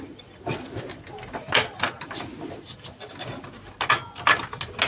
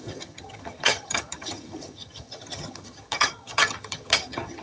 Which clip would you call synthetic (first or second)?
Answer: second